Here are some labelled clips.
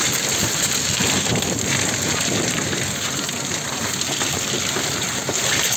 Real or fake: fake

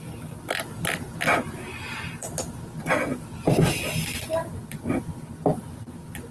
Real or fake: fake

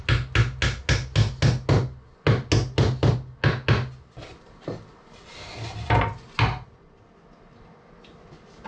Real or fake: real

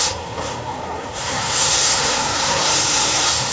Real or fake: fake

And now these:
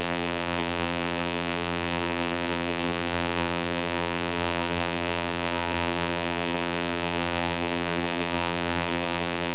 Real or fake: fake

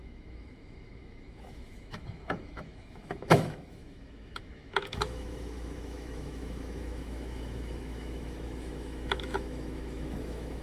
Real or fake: fake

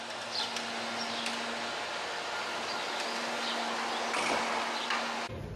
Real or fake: real